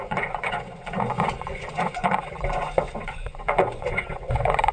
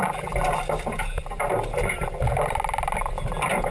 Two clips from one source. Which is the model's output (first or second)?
first